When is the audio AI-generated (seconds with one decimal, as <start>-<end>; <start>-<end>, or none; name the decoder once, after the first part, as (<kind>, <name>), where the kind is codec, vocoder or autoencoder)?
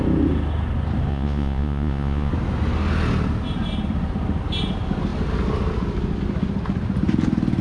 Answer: 1.1-2.3 (vocoder, Vocos)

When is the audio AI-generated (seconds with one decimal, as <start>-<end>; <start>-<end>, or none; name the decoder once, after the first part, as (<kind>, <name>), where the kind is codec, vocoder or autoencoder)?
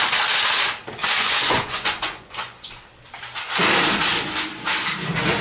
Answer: 1.0-2.7 (vocoder, Vocos)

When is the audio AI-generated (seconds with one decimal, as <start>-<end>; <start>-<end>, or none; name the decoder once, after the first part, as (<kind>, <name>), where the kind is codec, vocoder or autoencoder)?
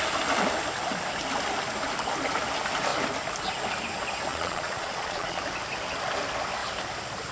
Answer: 4.3-5.4 (vocoder, Vocos)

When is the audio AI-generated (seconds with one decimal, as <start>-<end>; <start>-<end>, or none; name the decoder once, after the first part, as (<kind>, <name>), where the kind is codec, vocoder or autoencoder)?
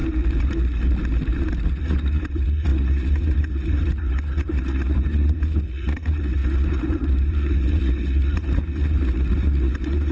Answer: 1.7-10.1 (vocoder, Vocos)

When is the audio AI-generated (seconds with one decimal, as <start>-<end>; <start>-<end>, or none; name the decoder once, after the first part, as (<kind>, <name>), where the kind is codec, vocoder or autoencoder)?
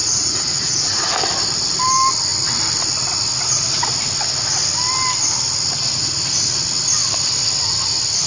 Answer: 0.0-1.1 (vocoder, Vocos)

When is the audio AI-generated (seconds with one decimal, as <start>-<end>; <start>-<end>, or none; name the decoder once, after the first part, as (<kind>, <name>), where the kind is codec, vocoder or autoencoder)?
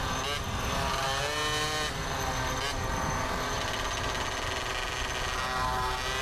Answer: none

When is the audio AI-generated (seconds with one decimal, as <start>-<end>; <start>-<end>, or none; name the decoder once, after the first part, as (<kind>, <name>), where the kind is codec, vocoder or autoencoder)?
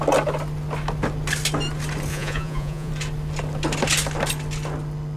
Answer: 2.1-2.9 (vocoder, Vocos)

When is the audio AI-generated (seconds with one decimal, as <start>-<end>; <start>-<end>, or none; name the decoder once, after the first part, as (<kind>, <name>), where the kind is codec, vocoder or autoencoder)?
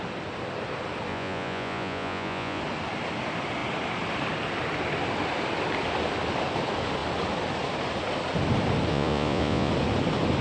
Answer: 1.1-2.6 (vocoder, Vocos); 8.9-9.7